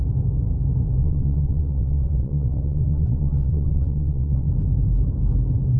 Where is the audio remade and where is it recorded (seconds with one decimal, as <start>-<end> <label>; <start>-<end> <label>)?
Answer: 0.0-1.0 recorded; 1.0-4.5 remade; 4.5-5.8 recorded